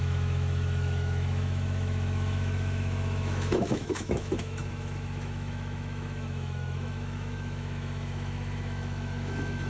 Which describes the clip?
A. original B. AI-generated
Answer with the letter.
B